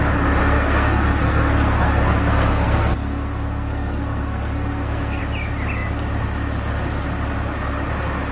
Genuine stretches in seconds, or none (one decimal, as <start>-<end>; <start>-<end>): 0.0-0.4; 5.2-8.3